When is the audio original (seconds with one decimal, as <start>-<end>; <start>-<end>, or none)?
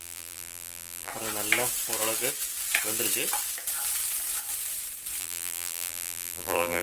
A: 1.1-5.2